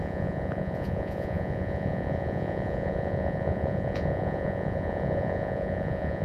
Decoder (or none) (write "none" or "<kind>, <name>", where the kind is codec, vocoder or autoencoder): vocoder, Vocos